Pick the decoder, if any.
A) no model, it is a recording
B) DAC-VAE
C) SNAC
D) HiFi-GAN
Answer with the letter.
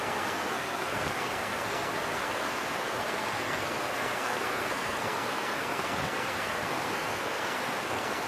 C